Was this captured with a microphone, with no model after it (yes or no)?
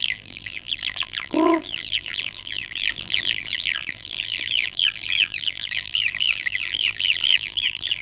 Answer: no